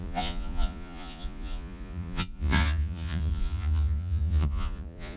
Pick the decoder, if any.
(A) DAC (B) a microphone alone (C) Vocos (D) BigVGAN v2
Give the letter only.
C